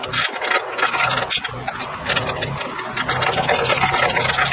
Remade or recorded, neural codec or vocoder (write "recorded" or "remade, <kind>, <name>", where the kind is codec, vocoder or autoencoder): recorded